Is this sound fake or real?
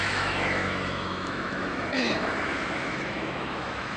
fake